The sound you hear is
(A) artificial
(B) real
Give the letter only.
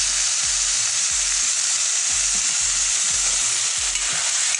B